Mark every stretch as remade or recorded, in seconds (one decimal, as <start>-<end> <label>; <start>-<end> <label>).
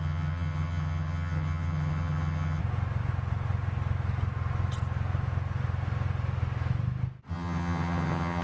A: 0.0-2.6 remade; 2.6-7.3 recorded; 7.3-8.4 remade